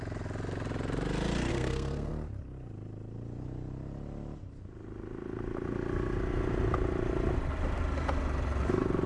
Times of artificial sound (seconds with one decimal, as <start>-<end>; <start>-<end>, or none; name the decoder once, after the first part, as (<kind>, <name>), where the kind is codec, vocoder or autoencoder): 1.5-2.1 (codec, SNAC)

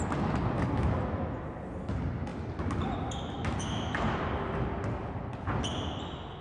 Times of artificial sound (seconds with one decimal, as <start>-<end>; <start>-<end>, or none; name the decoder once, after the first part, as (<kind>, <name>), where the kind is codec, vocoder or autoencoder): none

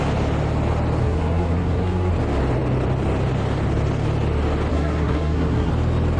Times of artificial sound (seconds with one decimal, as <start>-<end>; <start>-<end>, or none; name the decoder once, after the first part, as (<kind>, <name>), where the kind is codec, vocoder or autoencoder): 1.0-2.1 (codec, SNAC); 4.7-5.7

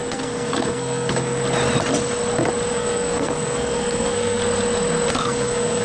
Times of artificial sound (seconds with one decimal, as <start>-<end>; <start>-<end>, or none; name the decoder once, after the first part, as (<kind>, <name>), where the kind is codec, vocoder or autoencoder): 0.0-1.4 (codec, SNAC); 2.7-4.4; 5.1-5.8